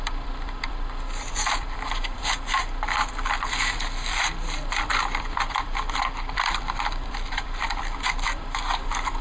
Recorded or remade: remade